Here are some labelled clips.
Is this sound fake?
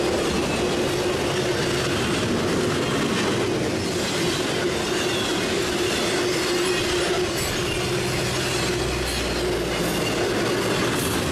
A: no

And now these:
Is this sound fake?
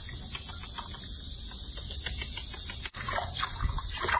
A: no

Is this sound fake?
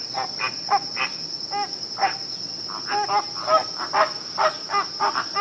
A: no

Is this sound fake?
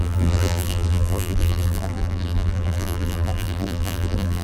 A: yes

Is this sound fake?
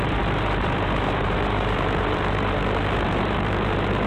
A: yes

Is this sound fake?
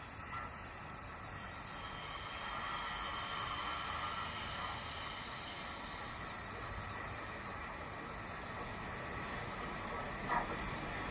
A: no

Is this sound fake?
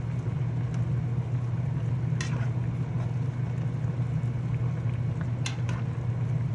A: no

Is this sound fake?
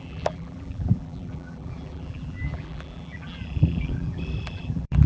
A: yes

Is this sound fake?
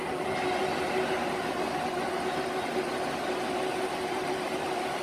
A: no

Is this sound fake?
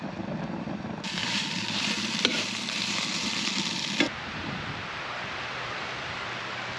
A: yes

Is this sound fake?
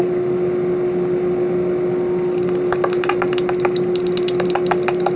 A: no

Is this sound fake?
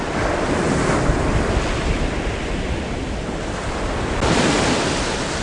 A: no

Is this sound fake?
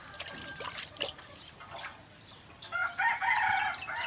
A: no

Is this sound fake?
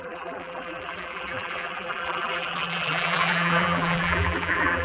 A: yes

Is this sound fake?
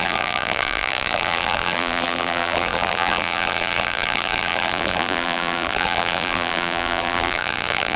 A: yes